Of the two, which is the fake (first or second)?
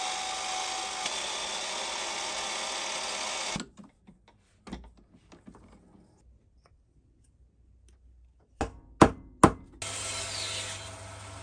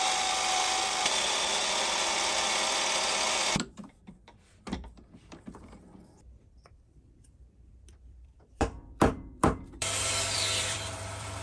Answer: second